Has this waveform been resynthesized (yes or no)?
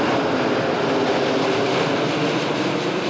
no